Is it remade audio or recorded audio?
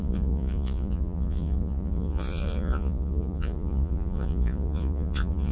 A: remade